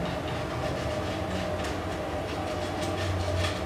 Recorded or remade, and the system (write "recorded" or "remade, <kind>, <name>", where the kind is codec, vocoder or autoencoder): recorded